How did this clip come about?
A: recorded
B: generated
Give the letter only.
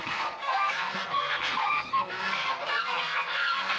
B